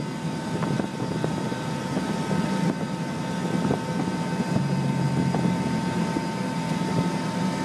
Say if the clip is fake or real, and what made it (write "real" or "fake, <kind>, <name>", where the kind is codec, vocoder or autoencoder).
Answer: real